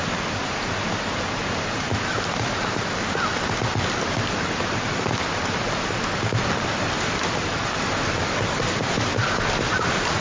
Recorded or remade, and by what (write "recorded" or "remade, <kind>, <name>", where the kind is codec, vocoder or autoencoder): remade, vocoder, BigVGAN v2